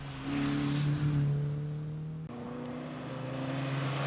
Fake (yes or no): no